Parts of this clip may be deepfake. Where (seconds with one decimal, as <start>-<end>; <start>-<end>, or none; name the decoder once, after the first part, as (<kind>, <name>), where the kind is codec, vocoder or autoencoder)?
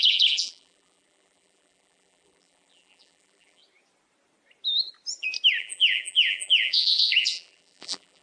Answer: 0.0-3.6 (vocoder, BigVGAN v2); 5.6-8.2